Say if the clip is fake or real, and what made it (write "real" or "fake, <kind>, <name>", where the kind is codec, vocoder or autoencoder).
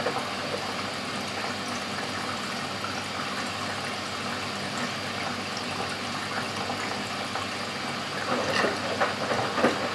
real